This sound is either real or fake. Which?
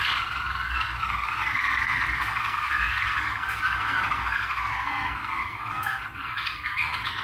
fake